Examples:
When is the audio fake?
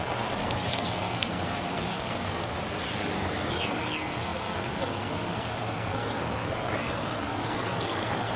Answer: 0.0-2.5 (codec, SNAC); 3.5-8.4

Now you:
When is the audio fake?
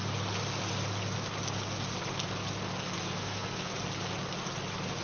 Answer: 3.0-3.7 (codec, SNAC)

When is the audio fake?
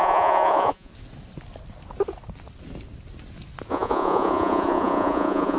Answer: 0.0-0.9 (vocoder, Vocos); 3.7-5.6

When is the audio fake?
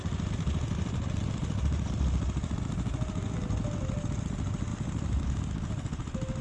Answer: none